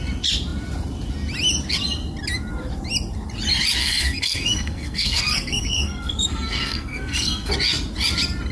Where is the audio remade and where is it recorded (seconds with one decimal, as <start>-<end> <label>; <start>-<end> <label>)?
0.0-3.8 recorded; 3.8-7.5 remade; 7.5-8.5 recorded

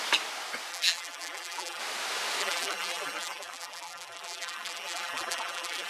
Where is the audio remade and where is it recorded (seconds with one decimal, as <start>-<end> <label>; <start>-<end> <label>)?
0.0-0.7 recorded; 0.7-1.8 remade; 1.8-2.4 recorded; 2.4-5.9 remade